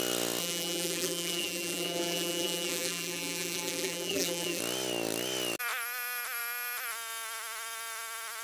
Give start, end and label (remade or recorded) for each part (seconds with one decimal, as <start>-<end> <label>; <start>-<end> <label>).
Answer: 0.0-0.4 recorded; 0.4-4.6 remade; 4.6-8.4 recorded